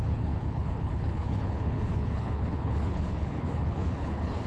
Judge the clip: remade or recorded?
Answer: remade